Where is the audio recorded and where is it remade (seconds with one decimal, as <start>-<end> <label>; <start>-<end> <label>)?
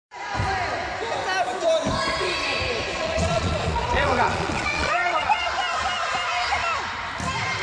0.0-2.9 recorded; 2.9-5.5 remade; 5.5-7.6 recorded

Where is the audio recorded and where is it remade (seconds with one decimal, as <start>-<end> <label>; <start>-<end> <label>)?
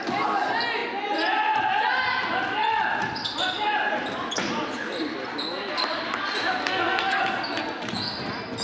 0.0-6.6 recorded; 6.6-7.2 remade; 7.2-8.6 recorded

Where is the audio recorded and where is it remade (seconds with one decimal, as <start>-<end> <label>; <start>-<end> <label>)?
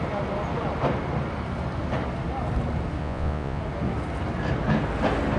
0.0-3.0 recorded; 3.0-3.6 remade; 3.6-5.4 recorded